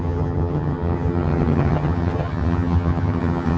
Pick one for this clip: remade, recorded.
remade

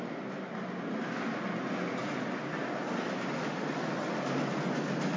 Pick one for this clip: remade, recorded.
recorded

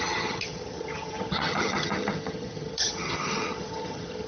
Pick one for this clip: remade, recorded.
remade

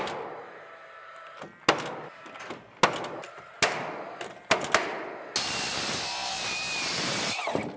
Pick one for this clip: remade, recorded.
recorded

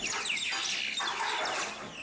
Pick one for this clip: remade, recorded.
recorded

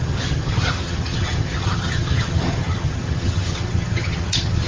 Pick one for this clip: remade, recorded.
remade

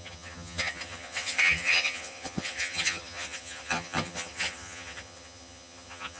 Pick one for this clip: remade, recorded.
remade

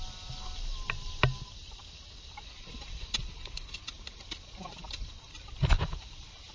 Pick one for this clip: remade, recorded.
recorded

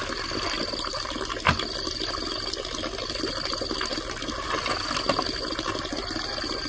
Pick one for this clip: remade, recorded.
recorded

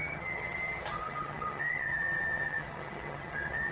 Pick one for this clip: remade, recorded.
remade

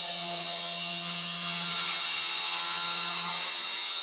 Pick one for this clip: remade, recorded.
remade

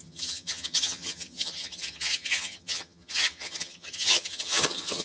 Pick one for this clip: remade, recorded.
remade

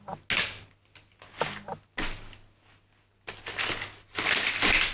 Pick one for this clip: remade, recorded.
recorded